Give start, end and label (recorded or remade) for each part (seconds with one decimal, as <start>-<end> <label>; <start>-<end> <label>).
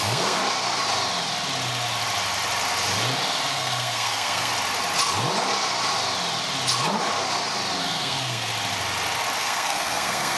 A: 0.0-0.4 remade; 0.4-3.5 recorded; 3.5-4.5 remade; 4.5-7.8 recorded; 7.8-8.5 remade; 8.5-9.4 recorded; 9.4-10.4 remade